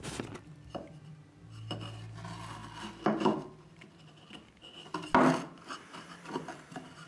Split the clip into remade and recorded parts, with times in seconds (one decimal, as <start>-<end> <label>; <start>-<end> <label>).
0.0-7.1 recorded